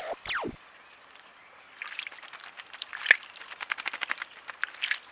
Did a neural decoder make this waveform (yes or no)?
no